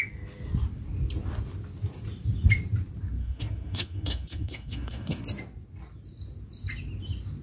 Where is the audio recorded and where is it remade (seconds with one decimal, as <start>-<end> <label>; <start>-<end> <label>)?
0.0-3.2 recorded; 3.2-5.2 remade; 5.2-7.4 recorded